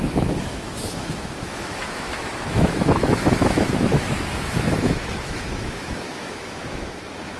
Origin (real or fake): fake